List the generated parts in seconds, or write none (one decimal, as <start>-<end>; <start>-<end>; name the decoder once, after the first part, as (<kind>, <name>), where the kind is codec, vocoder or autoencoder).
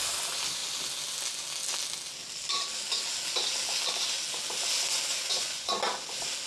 5.1-5.8 (vocoder, Vocos)